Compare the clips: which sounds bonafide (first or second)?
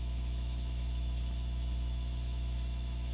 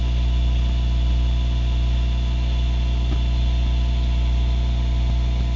second